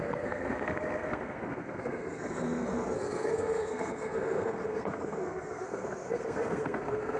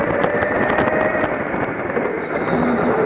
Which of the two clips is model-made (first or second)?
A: first